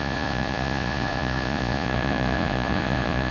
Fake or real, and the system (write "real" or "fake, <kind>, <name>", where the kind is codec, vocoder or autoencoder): fake, vocoder, Vocos